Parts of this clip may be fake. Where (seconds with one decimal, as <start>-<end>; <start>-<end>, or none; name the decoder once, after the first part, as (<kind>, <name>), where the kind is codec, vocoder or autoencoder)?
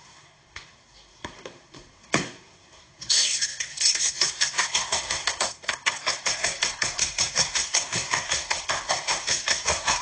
0.0-10.0 (codec, SNAC)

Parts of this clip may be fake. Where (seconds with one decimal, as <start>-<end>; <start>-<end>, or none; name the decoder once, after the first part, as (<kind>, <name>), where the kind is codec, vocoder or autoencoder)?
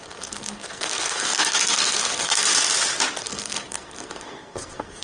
0.0-2.5 (codec, SNAC); 3.2-5.0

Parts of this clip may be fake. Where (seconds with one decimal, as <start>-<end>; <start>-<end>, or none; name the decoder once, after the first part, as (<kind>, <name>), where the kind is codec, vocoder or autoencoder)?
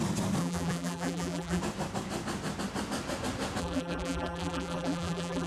0.4-1.6 (vocoder, BigVGAN v2); 3.6-5.5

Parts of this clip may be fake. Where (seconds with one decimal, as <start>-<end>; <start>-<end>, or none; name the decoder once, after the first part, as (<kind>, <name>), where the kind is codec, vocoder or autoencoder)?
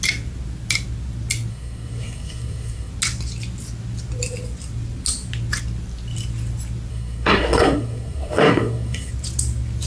1.5-2.9 (codec, SNAC); 6.9-9.1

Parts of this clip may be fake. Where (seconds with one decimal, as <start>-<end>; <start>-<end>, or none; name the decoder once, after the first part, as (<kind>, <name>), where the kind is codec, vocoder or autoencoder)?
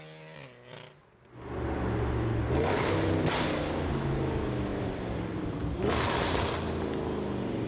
4.7-5.9 (vocoder, BigVGAN v2)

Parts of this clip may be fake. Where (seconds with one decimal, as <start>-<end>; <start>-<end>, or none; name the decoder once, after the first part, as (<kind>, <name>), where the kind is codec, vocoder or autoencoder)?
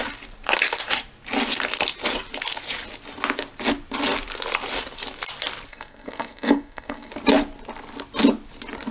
5.7-7.1 (codec, SNAC)